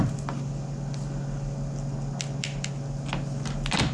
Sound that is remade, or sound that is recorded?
recorded